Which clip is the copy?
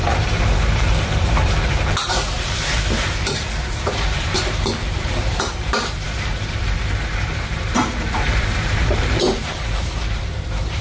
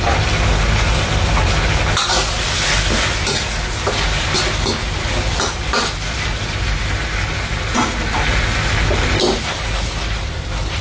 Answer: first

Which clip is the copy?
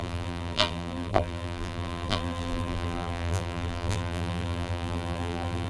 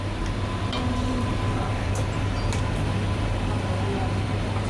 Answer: first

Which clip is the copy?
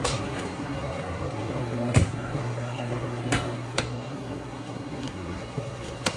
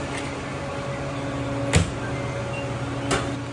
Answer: first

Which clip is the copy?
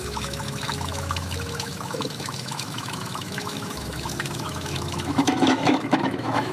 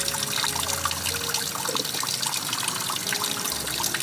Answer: first